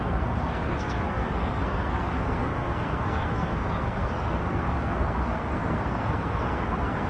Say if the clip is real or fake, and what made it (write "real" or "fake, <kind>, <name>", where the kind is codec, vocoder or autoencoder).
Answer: fake, codec, SNAC